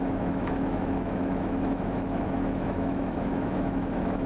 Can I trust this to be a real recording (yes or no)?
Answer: no